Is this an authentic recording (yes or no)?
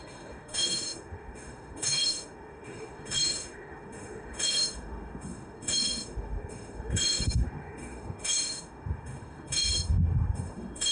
no